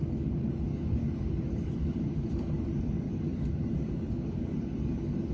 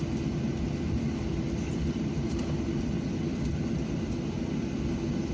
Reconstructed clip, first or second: first